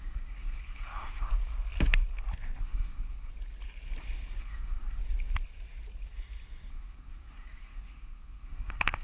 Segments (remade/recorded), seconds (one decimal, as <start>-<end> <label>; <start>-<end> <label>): 0.0-1.3 remade; 1.3-2.6 recorded; 2.6-3.3 remade; 3.3-4.4 recorded; 4.4-5.0 remade; 5.0-6.7 recorded; 6.7-9.0 remade